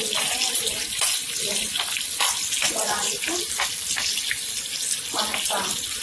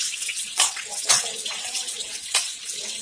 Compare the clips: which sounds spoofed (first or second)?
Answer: second